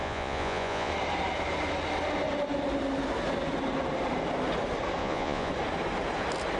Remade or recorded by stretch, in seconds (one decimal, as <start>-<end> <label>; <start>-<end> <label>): 0.0-0.9 remade; 0.9-5.0 recorded; 5.0-5.5 remade; 5.5-6.6 recorded